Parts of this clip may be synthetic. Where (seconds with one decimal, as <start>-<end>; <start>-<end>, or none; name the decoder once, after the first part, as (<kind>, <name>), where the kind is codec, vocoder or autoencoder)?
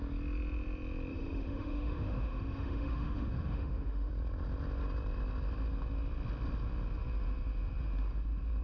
1.1-4.1 (autoencoder, DAC-VAE)